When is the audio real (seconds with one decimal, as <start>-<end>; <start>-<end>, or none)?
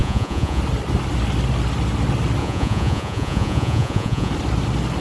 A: 0.6-2.4; 4.3-5.0